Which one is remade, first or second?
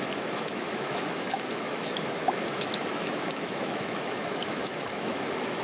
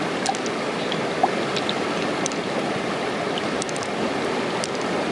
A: first